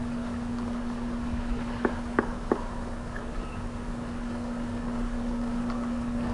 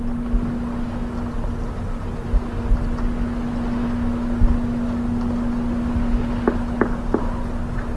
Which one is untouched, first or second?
second